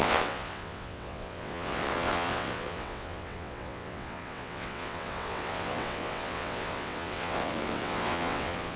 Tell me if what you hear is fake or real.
fake